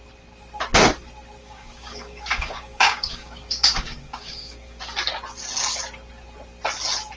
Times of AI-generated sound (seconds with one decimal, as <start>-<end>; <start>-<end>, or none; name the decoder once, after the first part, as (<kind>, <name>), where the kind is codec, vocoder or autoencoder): 1.4-4.8 (codec, DAC)

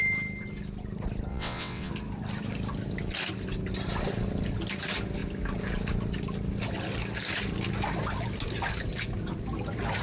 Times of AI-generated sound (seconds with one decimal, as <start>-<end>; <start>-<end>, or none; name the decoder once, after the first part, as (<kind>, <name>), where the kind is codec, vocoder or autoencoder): 1.3-1.9 (vocoder, WaveNeXt)

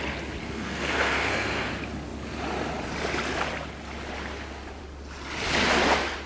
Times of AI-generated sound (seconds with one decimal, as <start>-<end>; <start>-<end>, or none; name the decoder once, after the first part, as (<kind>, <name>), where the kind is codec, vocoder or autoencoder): 0.4-1.7 (codec, SNAC)